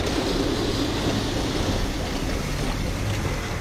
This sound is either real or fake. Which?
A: real